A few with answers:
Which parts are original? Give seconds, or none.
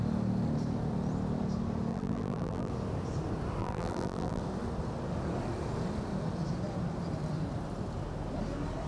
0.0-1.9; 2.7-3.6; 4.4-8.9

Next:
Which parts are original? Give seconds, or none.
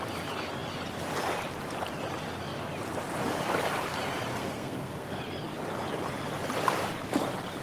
0.0-4.3; 5.2-7.6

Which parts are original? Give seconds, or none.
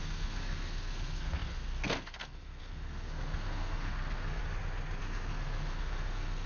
4.4-5.0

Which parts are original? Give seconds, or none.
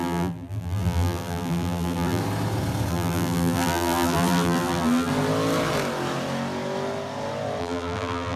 2.2-2.9; 5.1-7.6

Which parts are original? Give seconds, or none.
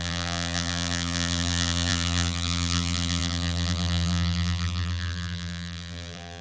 none